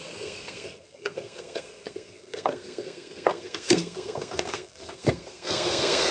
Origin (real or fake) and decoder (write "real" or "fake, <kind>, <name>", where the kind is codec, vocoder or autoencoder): fake, codec, SNAC